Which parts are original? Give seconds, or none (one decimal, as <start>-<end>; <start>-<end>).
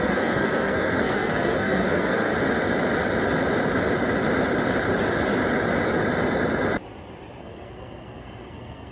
2.3-7.4